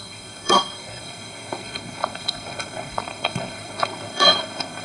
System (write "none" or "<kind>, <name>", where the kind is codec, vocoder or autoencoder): codec, SNAC